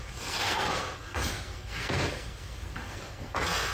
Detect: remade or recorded remade